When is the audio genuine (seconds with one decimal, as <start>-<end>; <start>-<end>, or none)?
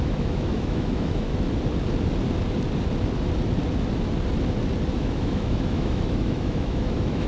1.3-4.9